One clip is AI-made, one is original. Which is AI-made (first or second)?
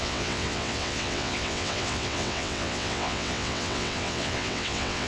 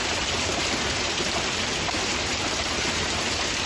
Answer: first